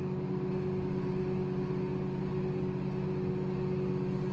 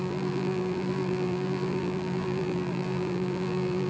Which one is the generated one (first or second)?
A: second